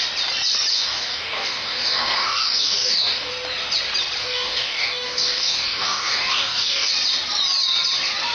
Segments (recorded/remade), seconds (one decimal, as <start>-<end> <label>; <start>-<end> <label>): 0.0-0.7 recorded; 0.7-3.3 remade; 3.3-4.2 recorded; 4.2-6.9 remade; 6.9-8.3 recorded